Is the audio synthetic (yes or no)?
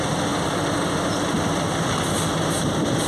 no